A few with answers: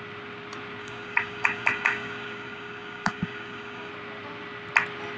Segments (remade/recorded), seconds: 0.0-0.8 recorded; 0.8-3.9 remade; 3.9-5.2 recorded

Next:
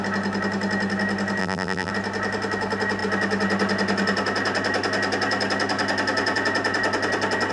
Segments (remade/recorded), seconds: 0.0-1.4 recorded; 1.4-1.9 remade; 1.9-7.5 recorded

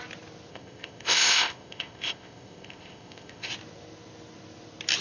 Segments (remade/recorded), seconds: 0.0-0.5 recorded; 0.5-3.5 remade; 3.5-5.0 recorded

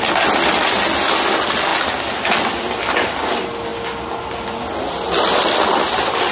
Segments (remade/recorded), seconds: 0.0-6.3 recorded

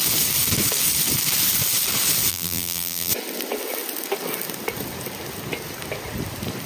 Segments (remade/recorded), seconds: 0.0-2.3 recorded; 2.3-3.1 remade; 3.1-6.7 recorded